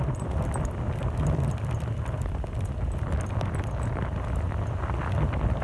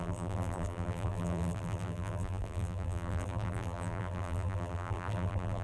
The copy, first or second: second